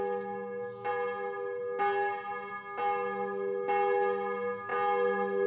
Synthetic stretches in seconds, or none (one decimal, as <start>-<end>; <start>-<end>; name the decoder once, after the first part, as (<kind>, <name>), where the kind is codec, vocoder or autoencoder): none